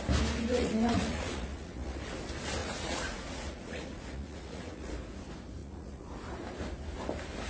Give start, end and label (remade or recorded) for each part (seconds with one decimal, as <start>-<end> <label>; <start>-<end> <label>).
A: 0.0-0.5 recorded; 0.5-2.1 remade; 2.1-2.6 recorded; 2.6-4.9 remade; 4.9-5.6 recorded; 5.6-6.1 remade; 6.1-7.5 recorded